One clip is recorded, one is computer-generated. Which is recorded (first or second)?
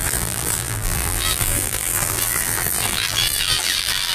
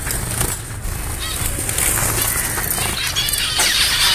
second